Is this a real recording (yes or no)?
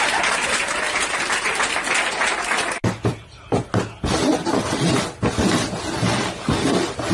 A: yes